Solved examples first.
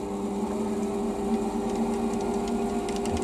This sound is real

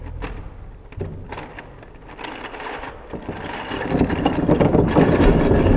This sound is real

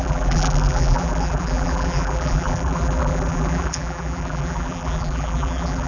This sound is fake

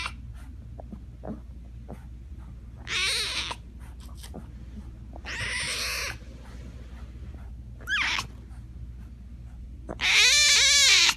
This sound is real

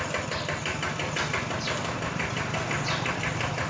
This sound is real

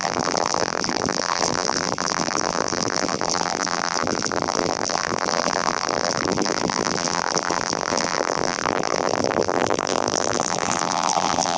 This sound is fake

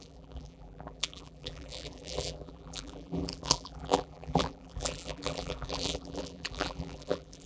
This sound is fake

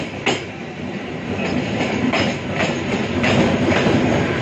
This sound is fake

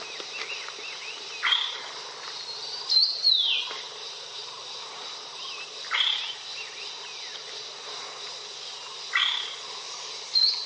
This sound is real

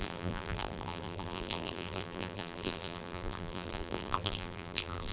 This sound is fake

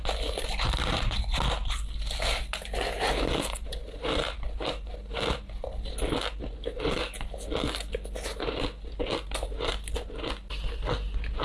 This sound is real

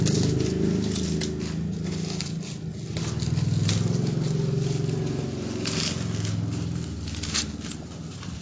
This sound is real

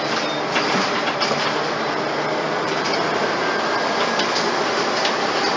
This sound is fake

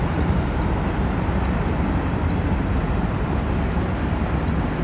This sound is real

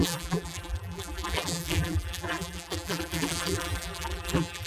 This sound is fake